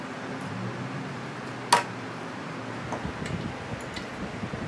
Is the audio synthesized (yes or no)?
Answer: no